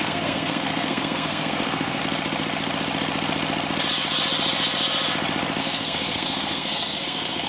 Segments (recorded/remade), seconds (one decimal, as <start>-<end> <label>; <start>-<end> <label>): 0.0-2.0 remade; 2.0-5.6 recorded; 5.6-7.5 remade